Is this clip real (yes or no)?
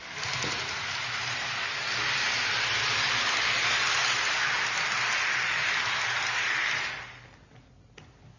yes